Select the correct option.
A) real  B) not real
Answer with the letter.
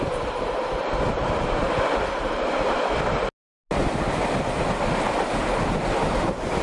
A